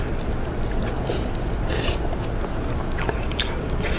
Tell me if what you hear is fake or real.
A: real